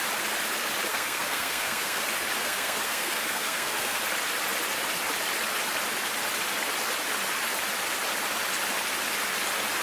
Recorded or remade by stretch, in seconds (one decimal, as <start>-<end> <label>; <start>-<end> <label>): 0.0-0.9 recorded; 0.9-2.0 remade; 2.0-2.4 recorded; 2.4-4.0 remade; 4.0-9.8 recorded